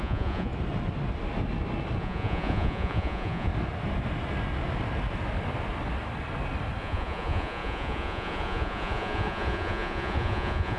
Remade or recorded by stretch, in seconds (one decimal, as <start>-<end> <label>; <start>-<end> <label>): 0.0-0.5 remade; 0.5-2.0 recorded; 2.0-3.5 remade; 3.5-6.8 recorded; 6.8-10.8 remade